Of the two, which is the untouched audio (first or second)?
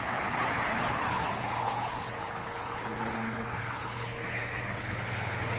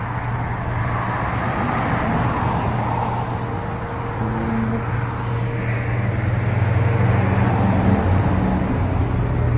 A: second